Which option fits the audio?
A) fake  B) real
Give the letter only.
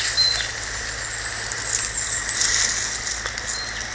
B